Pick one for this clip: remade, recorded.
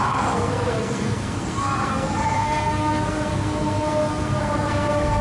remade